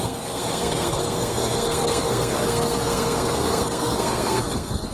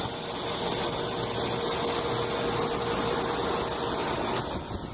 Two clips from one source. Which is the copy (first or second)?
first